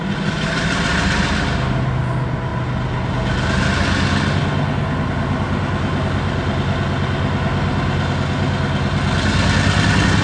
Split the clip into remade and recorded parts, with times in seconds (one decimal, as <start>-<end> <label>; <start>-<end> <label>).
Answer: 0.0-10.2 recorded